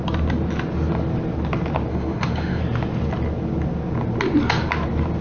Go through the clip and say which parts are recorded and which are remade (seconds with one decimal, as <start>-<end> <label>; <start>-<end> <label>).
0.0-1.9 recorded; 1.9-2.6 remade; 2.6-5.2 recorded